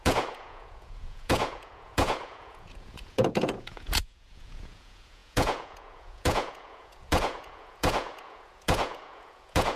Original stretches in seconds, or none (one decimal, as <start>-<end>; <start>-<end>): none

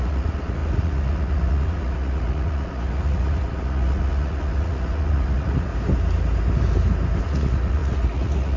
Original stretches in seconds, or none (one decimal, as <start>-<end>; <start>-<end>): 5.7-7.2

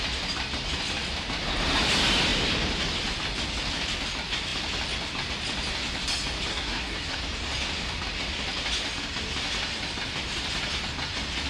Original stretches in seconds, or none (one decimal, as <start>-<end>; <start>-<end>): 0.0-6.5; 7.2-11.5

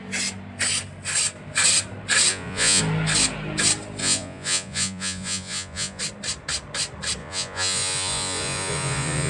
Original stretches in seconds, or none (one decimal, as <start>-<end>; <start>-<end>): 0.0-2.3; 2.8-4.0; 6.0-7.2

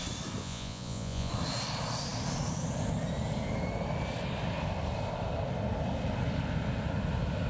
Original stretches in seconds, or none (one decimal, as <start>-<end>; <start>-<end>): 0.0-0.4; 1.3-7.5

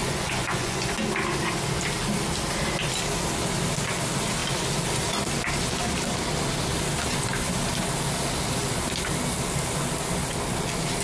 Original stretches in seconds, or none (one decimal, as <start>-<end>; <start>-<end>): 0.9-11.0